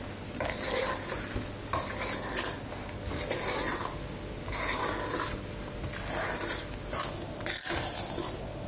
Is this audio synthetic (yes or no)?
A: no